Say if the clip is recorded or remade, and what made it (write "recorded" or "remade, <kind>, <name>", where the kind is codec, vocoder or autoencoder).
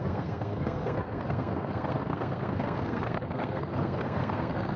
remade, codec, SNAC